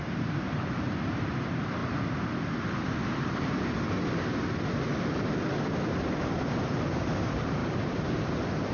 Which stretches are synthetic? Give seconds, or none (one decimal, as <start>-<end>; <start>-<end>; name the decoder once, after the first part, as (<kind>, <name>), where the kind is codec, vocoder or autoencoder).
0.0-1.8 (vocoder, BigVGAN v2); 6.8-8.7